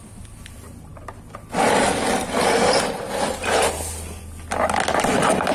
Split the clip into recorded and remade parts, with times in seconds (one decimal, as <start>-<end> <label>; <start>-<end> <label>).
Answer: 0.0-5.5 recorded